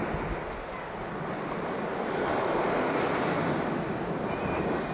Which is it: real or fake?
real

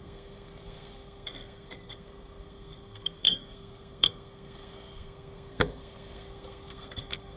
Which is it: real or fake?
fake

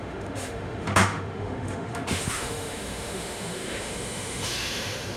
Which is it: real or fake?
fake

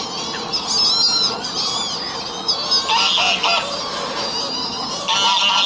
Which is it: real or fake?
real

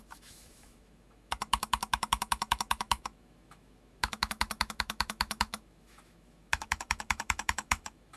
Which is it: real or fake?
fake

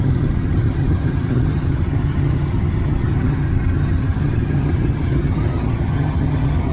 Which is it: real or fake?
fake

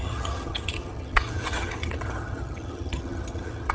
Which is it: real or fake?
fake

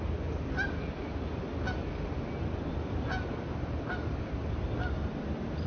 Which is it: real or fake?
real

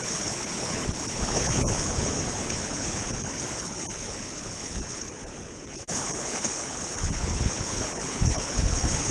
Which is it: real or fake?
fake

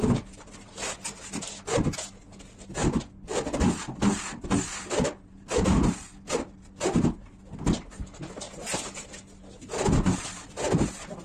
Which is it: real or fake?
real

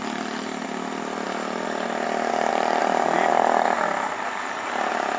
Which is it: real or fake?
real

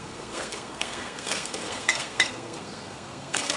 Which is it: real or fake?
fake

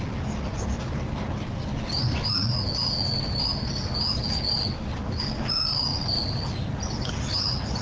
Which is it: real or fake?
real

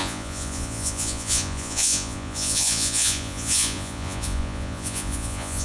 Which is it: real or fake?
fake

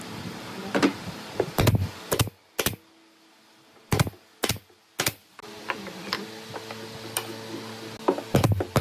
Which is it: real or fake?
real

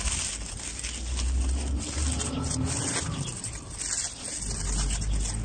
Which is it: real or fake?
real